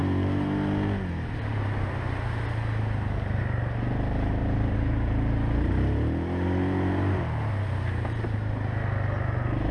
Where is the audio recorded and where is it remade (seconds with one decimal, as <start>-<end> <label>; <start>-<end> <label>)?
0.0-4.4 recorded; 4.4-5.1 remade; 5.1-9.7 recorded